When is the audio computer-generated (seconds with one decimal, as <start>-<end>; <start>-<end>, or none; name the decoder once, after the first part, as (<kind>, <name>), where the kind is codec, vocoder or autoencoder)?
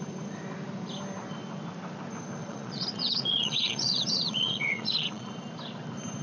2.4-5.3 (vocoder, Vocos)